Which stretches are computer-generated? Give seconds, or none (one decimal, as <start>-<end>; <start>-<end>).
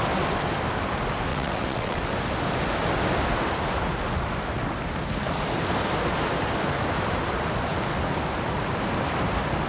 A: 1.3-2.0